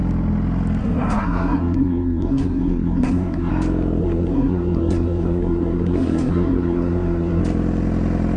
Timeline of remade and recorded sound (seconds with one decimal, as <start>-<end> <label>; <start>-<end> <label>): 0.0-0.8 recorded; 0.8-3.5 remade; 3.5-4.0 recorded; 4.0-7.4 remade; 7.4-8.4 recorded